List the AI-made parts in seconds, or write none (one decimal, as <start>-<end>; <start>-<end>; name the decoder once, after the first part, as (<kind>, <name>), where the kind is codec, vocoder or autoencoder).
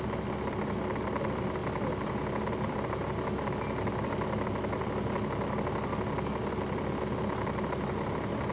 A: none